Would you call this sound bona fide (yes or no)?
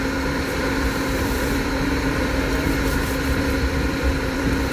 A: no